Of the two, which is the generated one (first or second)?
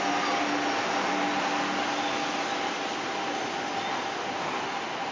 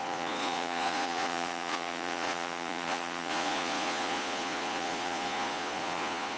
second